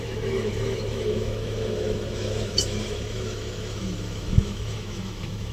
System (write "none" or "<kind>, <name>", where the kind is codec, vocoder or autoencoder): autoencoder, DAC-VAE